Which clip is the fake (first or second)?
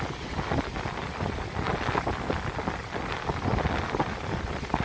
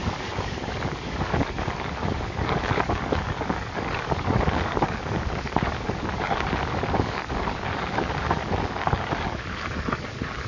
second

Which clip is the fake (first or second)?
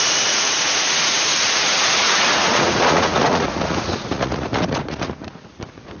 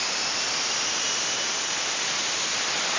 first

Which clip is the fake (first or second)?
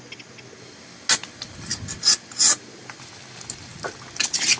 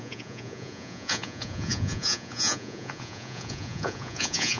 second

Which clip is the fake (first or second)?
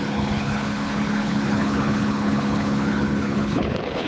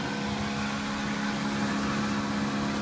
first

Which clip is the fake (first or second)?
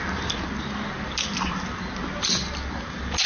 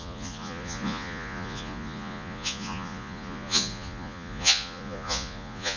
second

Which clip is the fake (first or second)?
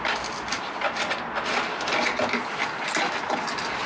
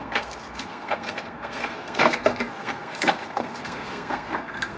second